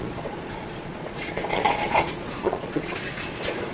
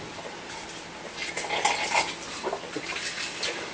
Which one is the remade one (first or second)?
first